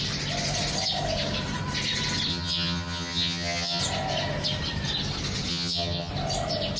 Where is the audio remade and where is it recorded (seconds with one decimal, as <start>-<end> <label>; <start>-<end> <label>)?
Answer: 0.0-2.3 recorded; 2.3-3.8 remade; 3.8-5.5 recorded; 5.5-6.1 remade; 6.1-6.8 recorded